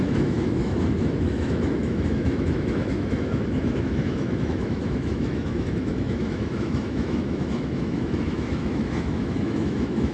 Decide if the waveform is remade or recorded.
remade